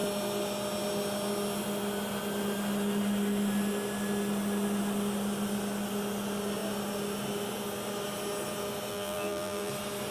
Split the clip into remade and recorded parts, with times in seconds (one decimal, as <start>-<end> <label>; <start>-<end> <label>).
0.0-8.9 recorded; 8.9-9.7 remade; 9.7-10.1 recorded